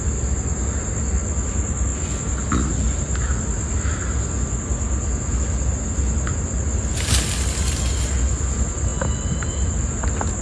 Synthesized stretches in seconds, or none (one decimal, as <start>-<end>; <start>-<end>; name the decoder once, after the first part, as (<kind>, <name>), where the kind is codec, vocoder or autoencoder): none

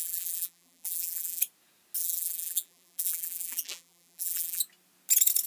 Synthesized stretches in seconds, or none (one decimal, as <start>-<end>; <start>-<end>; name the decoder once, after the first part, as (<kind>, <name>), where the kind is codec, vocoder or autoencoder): 0.0-1.4 (vocoder, BigVGAN v2); 2.0-4.6